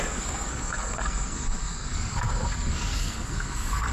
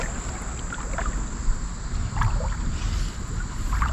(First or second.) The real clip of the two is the second